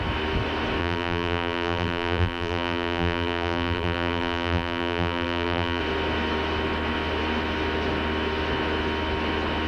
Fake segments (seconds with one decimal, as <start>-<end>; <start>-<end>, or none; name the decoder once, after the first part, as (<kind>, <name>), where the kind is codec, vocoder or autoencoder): 0.8-5.8 (vocoder, BigVGAN v2)